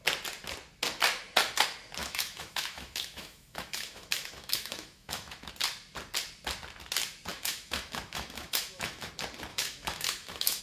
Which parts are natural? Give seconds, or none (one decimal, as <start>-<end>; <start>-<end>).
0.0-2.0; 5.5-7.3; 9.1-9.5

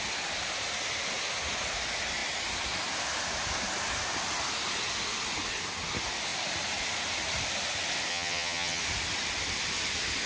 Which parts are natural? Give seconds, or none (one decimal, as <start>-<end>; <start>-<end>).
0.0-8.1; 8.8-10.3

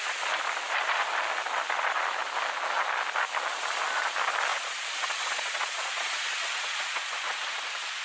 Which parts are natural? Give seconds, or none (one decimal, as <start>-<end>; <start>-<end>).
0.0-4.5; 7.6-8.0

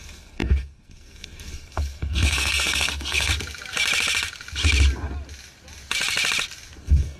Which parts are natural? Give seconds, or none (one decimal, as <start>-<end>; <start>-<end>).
3.3-6.8

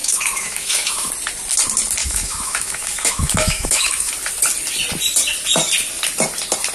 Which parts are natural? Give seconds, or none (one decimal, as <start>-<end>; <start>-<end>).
1.1-2.0; 4.1-6.7

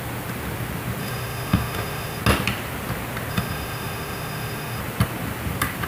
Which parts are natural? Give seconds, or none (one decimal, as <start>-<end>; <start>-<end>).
0.0-1.0; 2.2-3.3; 4.8-5.9